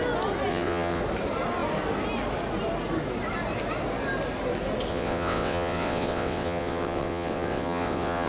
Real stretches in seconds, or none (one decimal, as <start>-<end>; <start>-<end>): 0.0-0.5; 1.0-4.9